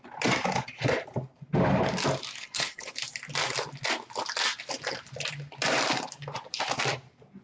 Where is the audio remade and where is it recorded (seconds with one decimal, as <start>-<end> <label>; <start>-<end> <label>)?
0.0-2.4 recorded; 2.4-2.9 remade; 2.9-7.4 recorded